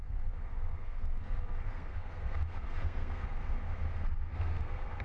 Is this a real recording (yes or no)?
no